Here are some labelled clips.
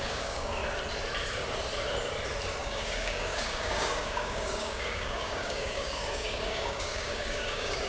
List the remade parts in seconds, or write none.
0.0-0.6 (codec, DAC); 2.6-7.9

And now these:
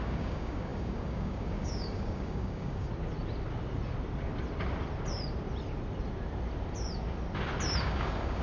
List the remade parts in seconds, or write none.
0.0-2.9 (codec, DAC); 7.8-8.4

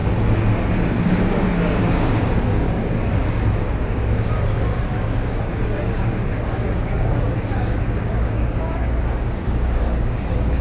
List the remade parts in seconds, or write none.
1.1-10.6 (codec, DAC)

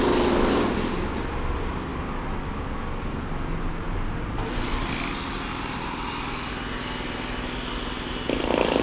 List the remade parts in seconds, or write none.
none

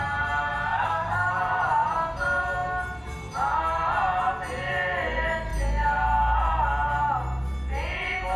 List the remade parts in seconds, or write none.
0.7-1.3 (codec, DAC)

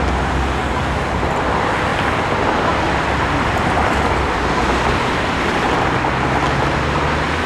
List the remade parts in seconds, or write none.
0.6-1.2 (codec, DAC)